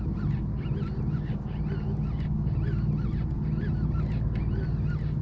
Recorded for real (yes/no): yes